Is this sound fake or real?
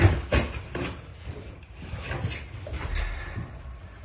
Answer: real